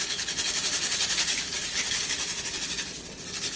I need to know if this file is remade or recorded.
recorded